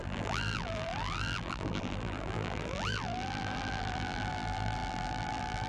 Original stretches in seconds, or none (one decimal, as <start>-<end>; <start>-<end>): none